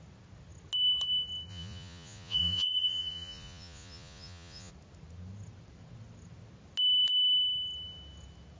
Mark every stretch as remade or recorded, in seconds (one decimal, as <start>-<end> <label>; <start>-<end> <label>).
0.0-1.5 recorded; 1.5-4.7 remade; 4.7-8.6 recorded